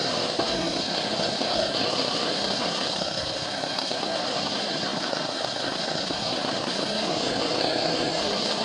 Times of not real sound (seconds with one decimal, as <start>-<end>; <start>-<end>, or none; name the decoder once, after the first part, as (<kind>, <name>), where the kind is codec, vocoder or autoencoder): 0.0-8.6 (codec, SNAC)